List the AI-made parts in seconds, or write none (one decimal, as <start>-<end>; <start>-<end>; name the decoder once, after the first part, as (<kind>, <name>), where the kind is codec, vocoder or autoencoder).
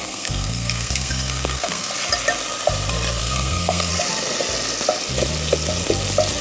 0.0-1.9 (codec, SNAC); 3.2-3.9